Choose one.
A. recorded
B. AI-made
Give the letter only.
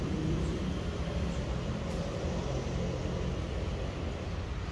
A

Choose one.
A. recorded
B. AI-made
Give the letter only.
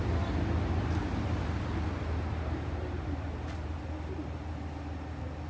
A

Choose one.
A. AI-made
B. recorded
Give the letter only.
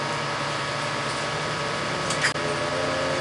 B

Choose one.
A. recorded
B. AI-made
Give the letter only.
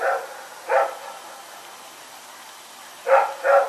A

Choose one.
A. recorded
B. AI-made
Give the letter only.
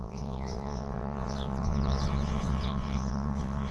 B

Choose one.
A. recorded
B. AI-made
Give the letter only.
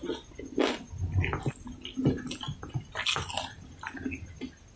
A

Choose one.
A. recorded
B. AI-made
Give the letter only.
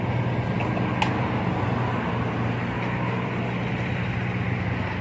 A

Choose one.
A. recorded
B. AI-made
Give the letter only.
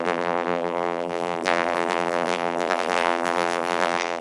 B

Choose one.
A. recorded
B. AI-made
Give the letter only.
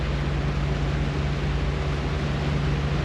A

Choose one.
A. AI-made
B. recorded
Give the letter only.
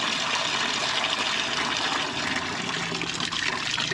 B